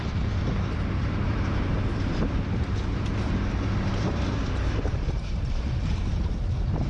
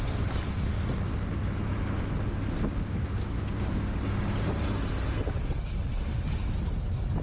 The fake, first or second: first